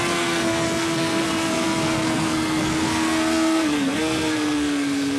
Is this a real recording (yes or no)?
no